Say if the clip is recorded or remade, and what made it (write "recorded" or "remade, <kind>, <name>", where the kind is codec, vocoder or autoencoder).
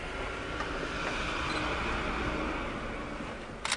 recorded